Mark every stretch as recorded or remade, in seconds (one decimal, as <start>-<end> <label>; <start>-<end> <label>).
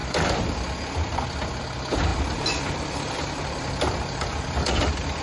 0.0-2.1 recorded; 2.1-5.2 remade